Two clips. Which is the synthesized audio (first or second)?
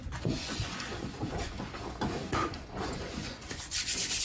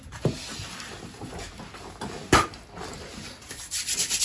first